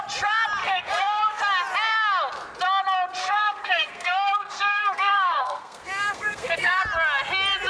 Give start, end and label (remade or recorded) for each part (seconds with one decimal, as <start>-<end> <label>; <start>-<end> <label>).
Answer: 0.0-0.6 recorded; 0.6-1.4 remade; 1.4-3.2 recorded; 3.2-6.8 remade; 6.8-7.7 recorded